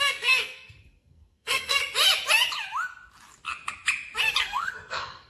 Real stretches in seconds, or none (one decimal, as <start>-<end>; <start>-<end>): 1.8-4.4